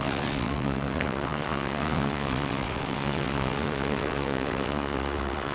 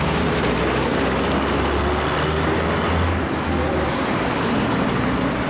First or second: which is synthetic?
first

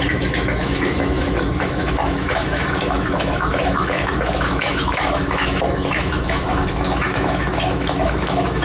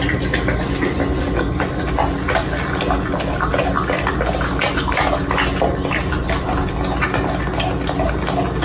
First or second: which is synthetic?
first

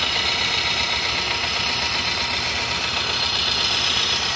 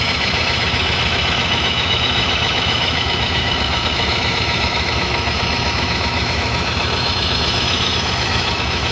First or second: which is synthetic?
second